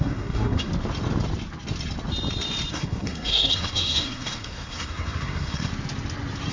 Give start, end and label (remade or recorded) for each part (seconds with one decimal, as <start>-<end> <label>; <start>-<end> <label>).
0.0-0.7 remade; 0.7-2.7 recorded; 2.7-5.7 remade; 5.7-6.5 recorded